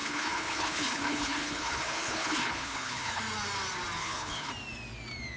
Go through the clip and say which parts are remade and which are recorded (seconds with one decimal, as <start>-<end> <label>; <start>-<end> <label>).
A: 0.0-3.2 remade; 3.2-4.0 recorded; 4.0-4.5 remade; 4.5-5.4 recorded